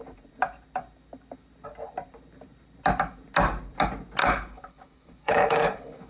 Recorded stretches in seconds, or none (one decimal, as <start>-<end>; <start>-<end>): 0.0-4.2